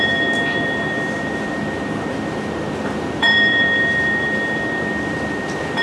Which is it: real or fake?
fake